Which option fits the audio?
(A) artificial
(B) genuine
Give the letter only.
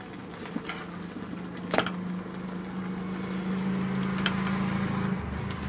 B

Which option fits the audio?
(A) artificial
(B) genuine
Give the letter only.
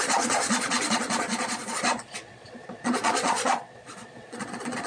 A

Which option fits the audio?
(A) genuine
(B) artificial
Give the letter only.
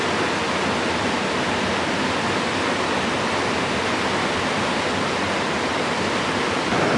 A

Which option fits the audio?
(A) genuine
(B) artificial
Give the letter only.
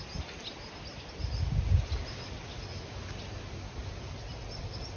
A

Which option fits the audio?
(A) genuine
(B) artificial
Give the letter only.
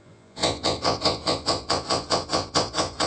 B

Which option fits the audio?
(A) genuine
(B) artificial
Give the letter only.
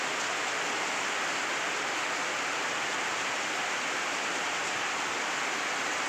A